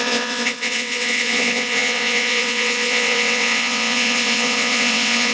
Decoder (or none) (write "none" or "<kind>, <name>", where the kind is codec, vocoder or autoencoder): vocoder, WaveNeXt